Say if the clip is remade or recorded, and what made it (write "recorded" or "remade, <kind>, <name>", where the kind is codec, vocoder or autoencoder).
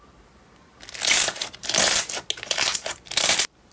recorded